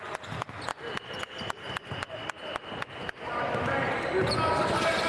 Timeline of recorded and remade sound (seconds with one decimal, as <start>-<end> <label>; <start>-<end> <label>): 0.0-5.1 recorded